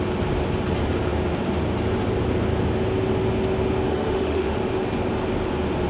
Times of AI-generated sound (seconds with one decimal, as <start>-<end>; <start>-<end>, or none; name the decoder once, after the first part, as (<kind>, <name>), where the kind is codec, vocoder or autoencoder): 3.9-4.6 (autoencoder, DAC-VAE)

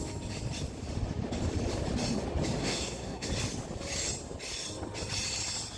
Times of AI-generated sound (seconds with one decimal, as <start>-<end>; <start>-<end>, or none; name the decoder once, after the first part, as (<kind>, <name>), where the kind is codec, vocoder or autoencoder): 2.6-3.3 (codec, SNAC)

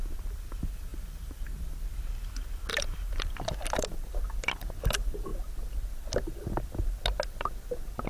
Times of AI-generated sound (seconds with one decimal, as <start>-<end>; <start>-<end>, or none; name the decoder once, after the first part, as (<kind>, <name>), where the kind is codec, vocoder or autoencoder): 0.9-1.4 (vocoder, BigVGAN v2); 2.7-4.7